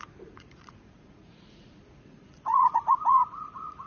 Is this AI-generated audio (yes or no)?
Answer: yes